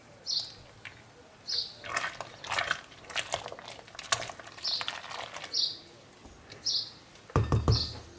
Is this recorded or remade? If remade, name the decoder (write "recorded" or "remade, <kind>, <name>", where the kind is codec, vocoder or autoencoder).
recorded